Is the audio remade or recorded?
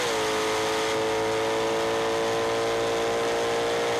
recorded